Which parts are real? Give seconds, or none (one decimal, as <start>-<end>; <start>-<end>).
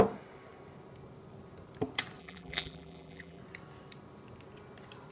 0.0-2.2; 3.4-5.1